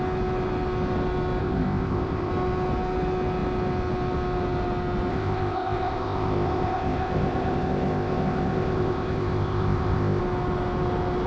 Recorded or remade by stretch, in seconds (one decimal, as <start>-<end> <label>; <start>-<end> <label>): 0.0-1.4 recorded; 1.4-2.3 remade; 2.3-5.1 recorded; 5.1-10.2 remade; 10.2-11.3 recorded